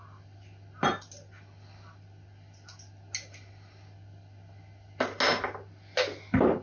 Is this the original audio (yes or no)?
yes